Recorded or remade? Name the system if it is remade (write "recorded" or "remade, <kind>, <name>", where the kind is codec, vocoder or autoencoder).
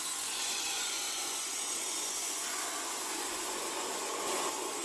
remade, vocoder, Vocos